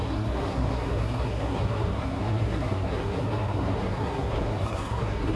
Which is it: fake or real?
fake